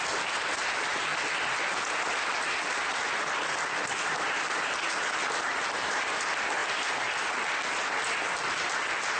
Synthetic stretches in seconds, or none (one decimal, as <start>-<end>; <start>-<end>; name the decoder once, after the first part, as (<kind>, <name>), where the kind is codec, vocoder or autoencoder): none